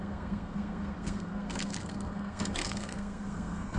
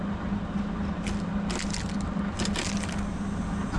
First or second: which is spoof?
first